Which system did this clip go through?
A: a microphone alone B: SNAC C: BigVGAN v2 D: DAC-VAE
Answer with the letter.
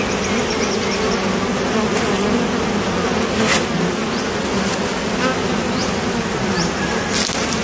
A